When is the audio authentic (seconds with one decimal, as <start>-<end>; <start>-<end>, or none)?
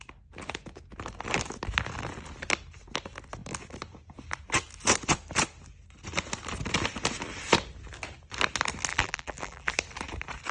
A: 0.0-8.9; 9.7-10.5